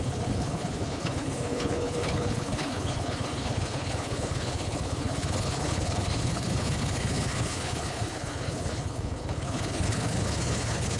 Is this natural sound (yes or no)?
no